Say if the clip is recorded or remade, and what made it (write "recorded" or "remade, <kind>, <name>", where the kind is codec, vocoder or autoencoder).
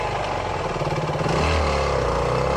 recorded